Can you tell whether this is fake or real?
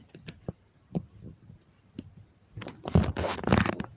real